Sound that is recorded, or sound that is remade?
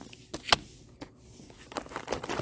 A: recorded